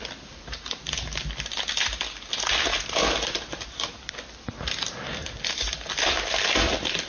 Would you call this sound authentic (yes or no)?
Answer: yes